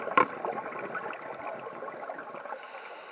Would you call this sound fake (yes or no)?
no